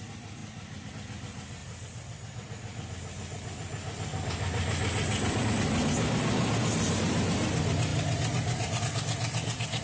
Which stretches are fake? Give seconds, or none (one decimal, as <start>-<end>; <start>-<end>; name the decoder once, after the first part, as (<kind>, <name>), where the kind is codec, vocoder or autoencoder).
0.4-0.9 (vocoder, BigVGAN v2); 7.9-8.8